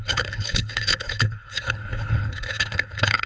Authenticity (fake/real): fake